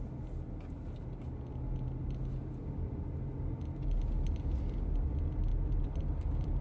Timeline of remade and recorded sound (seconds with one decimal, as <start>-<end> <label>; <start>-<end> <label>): 0.0-6.6 recorded